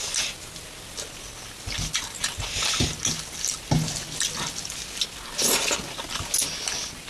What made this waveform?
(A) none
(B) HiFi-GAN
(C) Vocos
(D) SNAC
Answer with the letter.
A